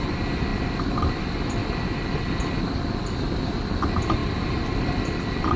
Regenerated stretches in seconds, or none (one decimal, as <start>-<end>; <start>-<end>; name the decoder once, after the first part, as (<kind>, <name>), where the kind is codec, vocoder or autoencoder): none